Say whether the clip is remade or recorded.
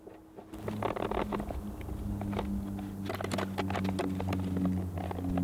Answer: recorded